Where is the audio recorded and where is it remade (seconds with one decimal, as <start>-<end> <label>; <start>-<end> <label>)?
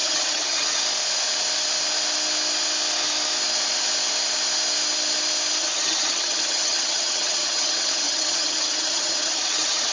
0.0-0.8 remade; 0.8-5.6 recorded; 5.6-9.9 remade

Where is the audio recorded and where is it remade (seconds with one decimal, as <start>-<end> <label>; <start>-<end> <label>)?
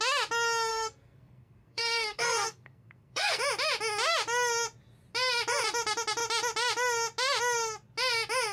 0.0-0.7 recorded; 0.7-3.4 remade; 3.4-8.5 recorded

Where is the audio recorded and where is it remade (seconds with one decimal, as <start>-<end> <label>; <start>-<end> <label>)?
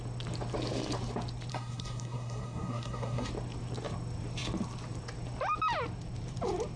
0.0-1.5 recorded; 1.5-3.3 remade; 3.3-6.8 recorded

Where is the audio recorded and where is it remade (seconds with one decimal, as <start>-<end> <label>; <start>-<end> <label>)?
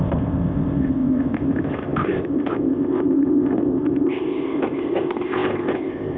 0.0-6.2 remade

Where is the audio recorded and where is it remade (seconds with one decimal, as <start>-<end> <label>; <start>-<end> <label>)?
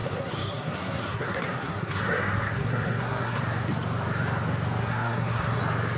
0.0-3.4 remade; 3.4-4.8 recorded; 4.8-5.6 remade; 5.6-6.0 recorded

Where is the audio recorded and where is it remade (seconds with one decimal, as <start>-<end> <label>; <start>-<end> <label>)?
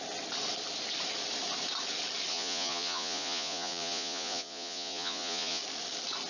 0.0-2.3 recorded; 2.3-5.6 remade; 5.6-6.3 recorded